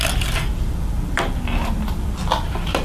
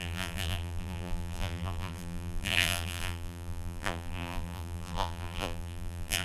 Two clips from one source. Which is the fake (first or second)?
second